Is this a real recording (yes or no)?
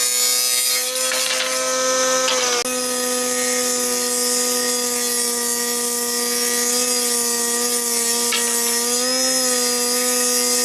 yes